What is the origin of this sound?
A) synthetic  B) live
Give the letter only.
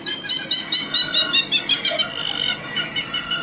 B